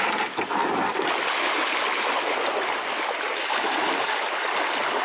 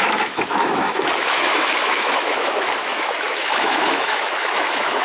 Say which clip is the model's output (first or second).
second